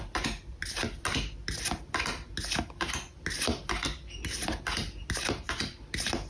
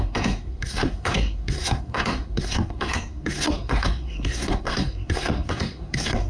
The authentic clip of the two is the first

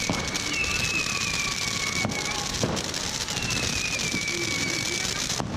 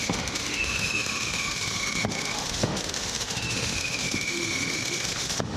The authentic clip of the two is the first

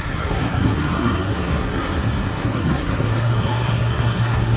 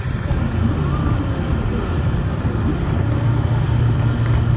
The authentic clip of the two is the second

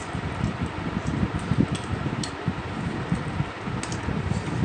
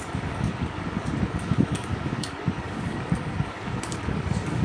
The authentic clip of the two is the first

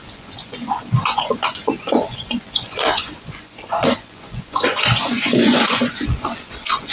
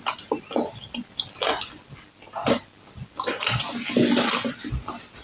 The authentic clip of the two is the second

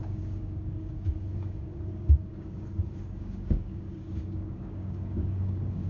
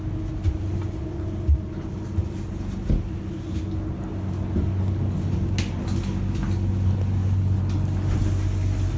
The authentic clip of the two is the second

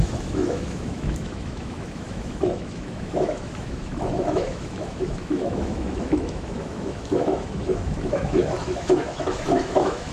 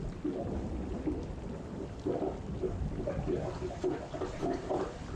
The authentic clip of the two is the second